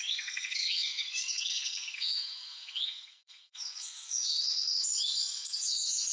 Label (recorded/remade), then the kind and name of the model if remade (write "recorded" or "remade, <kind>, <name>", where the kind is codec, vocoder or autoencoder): remade, codec, SNAC